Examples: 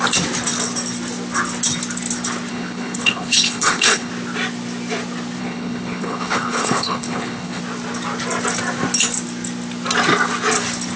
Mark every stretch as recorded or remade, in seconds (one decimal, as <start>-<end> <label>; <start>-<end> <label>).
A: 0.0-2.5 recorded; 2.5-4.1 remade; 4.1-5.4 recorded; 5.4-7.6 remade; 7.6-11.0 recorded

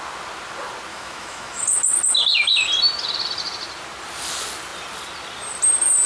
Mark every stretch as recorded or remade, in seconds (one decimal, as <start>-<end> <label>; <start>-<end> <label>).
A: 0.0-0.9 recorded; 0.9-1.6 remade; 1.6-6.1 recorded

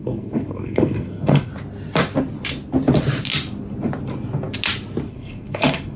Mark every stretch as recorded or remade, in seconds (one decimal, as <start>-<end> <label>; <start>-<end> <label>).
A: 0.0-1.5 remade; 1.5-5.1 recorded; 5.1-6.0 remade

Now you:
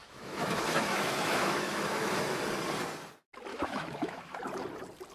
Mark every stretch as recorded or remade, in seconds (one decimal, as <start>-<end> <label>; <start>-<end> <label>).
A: 0.0-2.4 remade; 2.4-3.5 recorded; 3.5-4.4 remade; 4.4-5.1 recorded

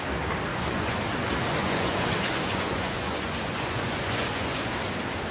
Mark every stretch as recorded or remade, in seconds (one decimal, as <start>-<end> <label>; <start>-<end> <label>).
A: 0.0-0.5 recorded; 0.5-1.0 remade; 1.0-1.6 recorded; 1.6-4.7 remade; 4.7-5.3 recorded

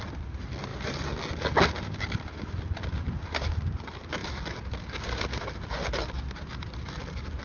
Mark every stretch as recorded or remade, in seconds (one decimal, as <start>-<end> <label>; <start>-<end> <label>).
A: 0.0-2.3 recorded; 2.3-3.5 remade; 3.5-4.2 recorded; 4.2-6.9 remade; 6.9-7.4 recorded